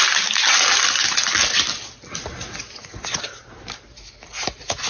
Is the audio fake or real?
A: real